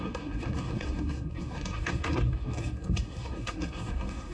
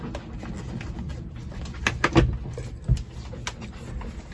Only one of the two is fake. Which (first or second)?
first